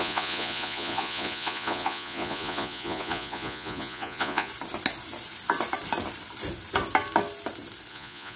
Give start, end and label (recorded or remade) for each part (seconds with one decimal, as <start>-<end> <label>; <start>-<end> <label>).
0.0-4.5 remade; 4.5-7.9 recorded; 7.9-8.4 remade